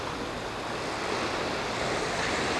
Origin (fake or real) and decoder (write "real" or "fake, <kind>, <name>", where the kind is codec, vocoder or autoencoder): real